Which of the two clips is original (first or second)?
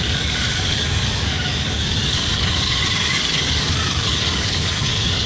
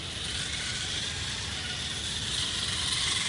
second